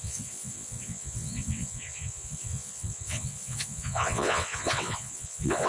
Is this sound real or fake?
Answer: fake